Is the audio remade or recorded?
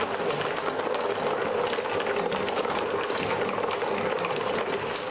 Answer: recorded